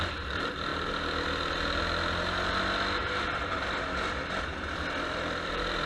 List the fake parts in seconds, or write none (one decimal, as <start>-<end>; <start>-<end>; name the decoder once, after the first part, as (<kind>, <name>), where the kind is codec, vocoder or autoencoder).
0.0-0.7 (vocoder, BigVGAN v2); 4.2-5.9